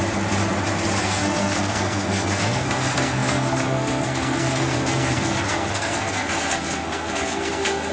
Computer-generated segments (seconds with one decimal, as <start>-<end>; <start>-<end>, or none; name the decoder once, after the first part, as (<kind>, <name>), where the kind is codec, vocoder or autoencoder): 1.0-7.9 (codec, SNAC)